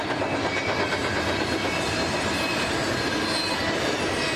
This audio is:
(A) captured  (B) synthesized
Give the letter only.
A